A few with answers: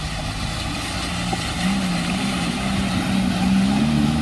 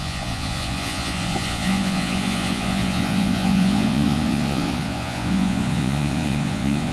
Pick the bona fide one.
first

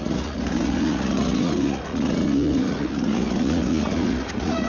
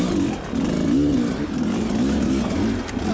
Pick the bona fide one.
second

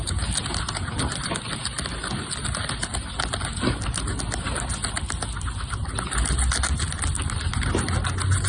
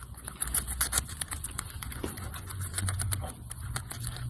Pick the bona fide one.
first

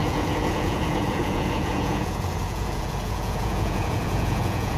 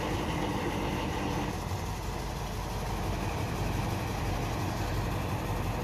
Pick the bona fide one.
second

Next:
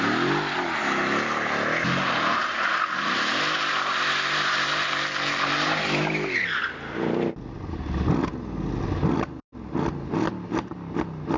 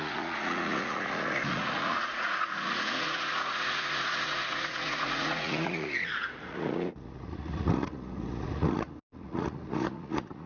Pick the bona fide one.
first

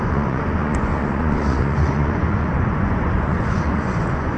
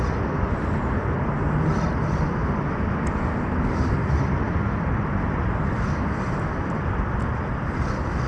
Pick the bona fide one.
second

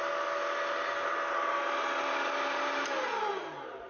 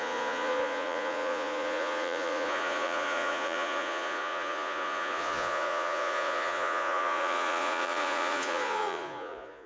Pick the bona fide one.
first